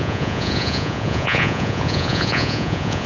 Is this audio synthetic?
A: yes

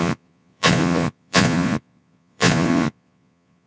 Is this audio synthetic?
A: yes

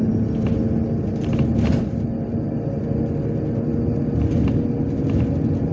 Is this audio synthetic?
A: no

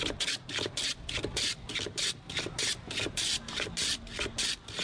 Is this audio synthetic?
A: no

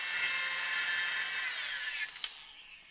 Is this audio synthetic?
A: no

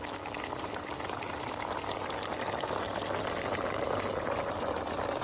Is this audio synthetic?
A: no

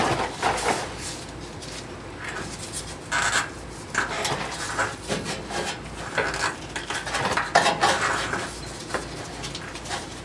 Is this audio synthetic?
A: no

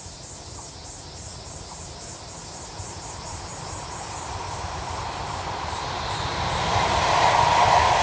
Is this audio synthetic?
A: no